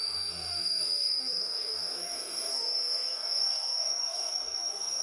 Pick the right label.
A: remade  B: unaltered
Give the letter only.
A